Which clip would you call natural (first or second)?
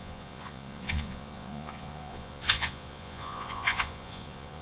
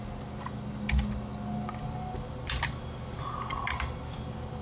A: second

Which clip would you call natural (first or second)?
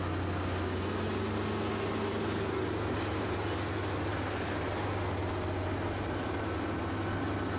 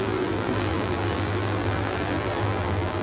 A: first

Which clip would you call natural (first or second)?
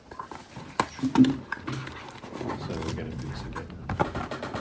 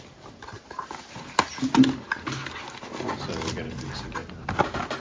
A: second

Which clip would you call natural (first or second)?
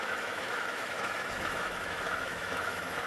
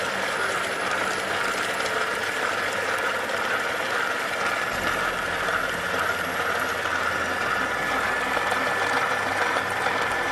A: second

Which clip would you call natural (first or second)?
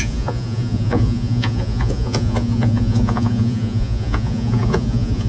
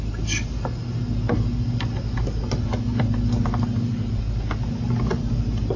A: second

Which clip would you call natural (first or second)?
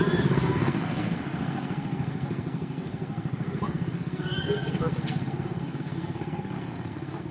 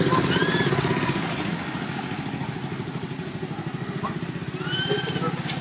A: second